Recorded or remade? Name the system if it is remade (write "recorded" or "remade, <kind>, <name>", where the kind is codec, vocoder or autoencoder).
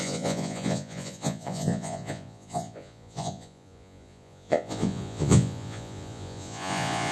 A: remade, vocoder, Vocos